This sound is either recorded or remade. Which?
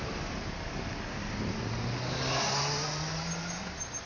recorded